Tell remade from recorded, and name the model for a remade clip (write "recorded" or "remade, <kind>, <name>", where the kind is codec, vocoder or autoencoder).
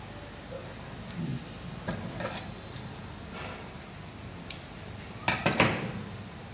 recorded